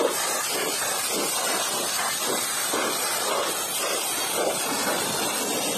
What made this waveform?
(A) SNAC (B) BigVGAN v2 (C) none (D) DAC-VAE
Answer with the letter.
C